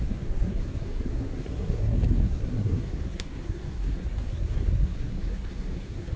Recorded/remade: remade